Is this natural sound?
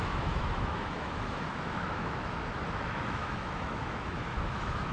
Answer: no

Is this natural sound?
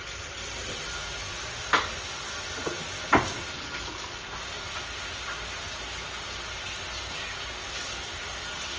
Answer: yes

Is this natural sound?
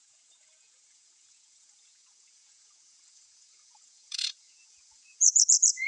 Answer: no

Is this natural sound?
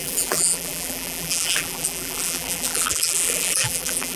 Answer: no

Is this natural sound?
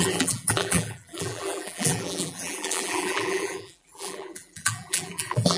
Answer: no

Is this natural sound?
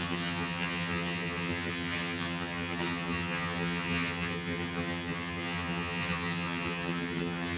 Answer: no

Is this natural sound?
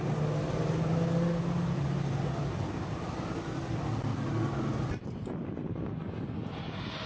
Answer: yes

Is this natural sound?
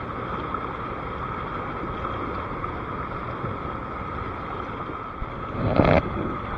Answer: yes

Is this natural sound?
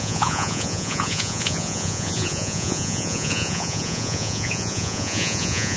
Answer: no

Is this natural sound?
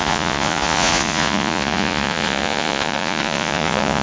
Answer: no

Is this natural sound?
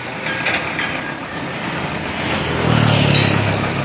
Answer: yes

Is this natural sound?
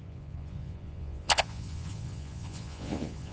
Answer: no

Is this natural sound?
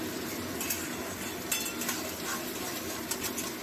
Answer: yes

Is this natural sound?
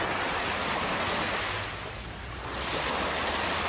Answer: yes